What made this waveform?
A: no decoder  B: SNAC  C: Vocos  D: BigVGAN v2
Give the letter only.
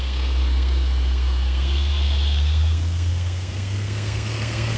B